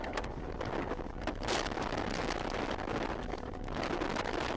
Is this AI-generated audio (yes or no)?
no